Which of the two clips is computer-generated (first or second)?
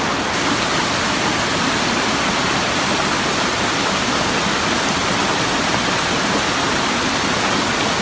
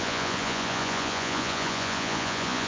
second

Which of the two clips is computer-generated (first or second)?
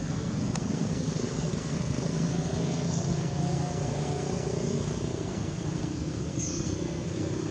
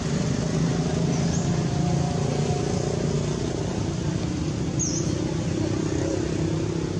first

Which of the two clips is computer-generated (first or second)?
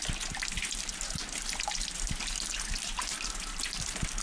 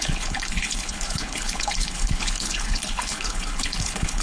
second